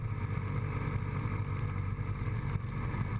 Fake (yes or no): no